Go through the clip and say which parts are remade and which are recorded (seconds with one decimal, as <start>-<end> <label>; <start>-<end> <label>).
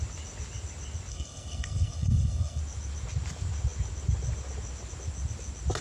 0.0-1.1 recorded; 1.1-2.6 remade; 2.6-5.8 recorded